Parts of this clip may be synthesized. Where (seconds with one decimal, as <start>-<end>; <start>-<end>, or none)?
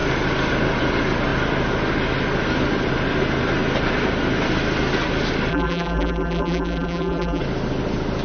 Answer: 5.5-7.4